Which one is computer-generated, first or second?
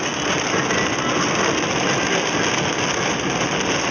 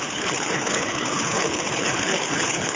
second